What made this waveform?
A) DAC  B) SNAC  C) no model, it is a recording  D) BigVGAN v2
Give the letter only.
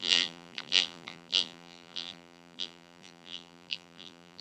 D